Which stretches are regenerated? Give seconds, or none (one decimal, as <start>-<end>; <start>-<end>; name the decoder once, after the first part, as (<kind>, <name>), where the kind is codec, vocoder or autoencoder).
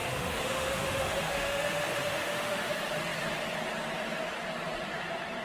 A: 0.0-2.7 (autoencoder, DAC-VAE)